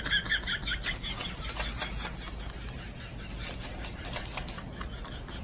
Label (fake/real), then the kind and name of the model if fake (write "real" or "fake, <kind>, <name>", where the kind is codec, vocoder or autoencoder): real